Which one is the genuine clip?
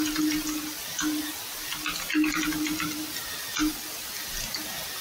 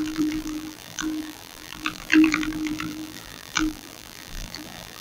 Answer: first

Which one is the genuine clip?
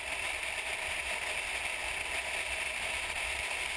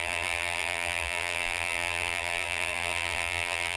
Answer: first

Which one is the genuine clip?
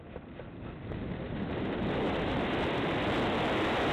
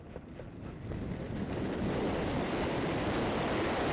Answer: first